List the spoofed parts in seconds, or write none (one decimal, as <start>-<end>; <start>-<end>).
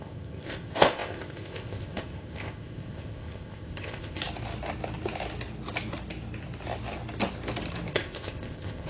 0.0-4.2; 7.9-8.9